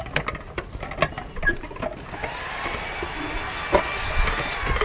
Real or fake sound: real